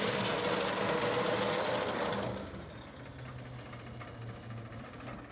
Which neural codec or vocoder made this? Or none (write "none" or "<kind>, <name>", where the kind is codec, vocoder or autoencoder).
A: none